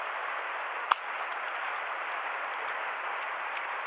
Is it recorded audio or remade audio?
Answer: remade